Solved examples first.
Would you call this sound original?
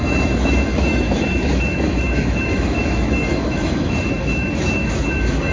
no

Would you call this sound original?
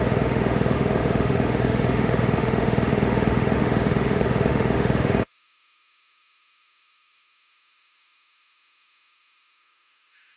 no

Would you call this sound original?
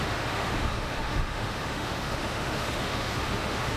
no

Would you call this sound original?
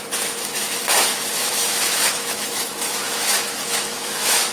no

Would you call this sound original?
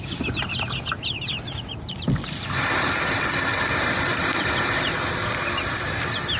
yes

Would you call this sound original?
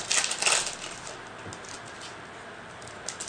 yes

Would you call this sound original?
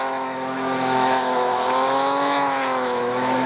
no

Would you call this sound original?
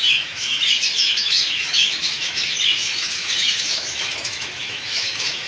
no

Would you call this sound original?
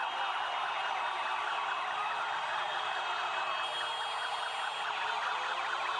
yes